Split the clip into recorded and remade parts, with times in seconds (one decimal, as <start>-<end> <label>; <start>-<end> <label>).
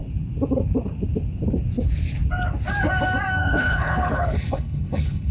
0.0-3.4 recorded; 3.4-5.3 remade